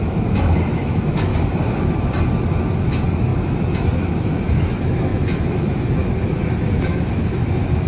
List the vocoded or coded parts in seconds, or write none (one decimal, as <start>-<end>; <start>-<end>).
0.0-1.3; 2.9-7.9